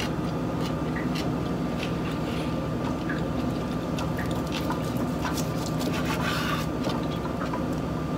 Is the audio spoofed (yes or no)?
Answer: no